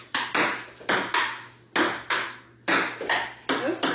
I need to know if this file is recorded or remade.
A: recorded